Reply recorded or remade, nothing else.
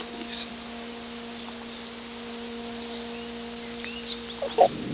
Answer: recorded